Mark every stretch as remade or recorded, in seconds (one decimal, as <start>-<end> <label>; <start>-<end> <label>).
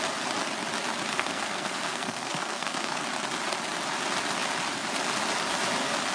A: 0.0-1.1 recorded; 1.1-3.0 remade; 3.0-6.1 recorded